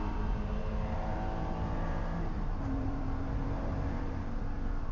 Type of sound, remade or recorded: remade